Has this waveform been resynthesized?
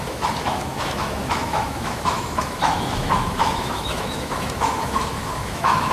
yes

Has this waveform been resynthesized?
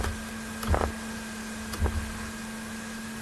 no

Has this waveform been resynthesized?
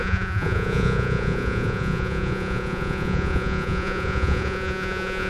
yes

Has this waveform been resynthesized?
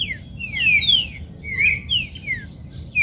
no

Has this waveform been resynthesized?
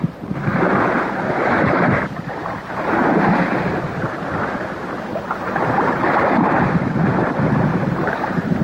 yes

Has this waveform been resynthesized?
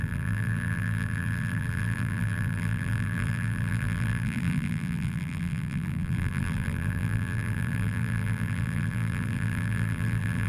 yes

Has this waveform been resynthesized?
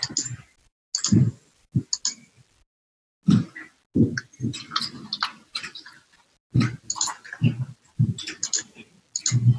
no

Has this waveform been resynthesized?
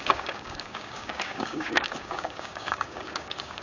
yes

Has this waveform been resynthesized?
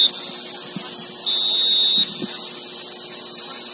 no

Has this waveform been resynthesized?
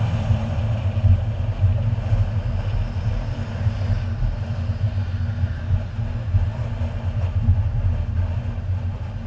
no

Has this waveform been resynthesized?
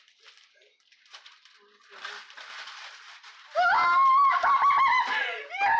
no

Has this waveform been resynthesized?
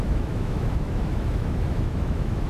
yes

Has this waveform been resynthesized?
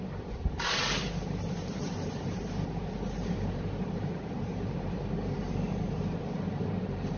yes